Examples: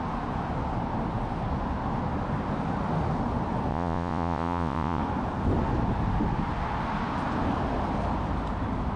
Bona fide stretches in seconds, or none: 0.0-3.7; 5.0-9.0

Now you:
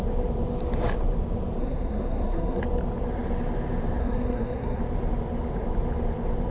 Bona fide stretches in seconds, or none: 0.0-1.6; 2.6-4.0; 4.8-6.5

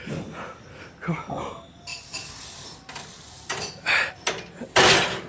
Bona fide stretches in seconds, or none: 0.0-5.3

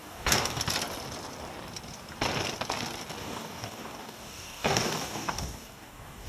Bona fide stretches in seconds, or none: 0.6-3.2

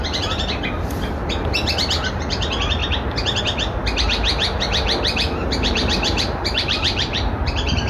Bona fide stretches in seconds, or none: 0.0-2.8; 3.4-5.4; 7.3-7.9